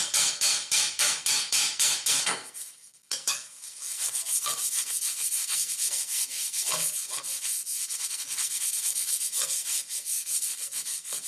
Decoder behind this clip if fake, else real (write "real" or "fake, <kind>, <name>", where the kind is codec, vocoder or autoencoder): fake, codec, SNAC